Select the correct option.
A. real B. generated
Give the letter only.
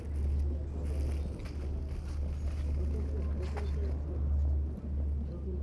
A